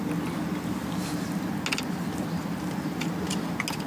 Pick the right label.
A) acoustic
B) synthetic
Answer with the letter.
A